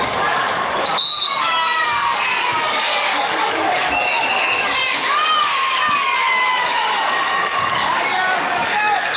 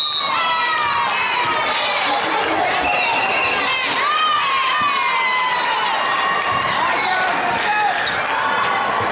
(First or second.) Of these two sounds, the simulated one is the first